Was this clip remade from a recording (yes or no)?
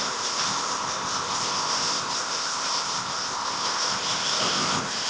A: yes